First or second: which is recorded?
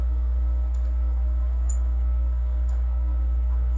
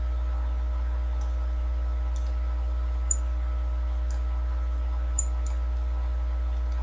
second